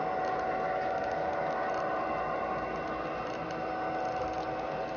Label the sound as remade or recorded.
recorded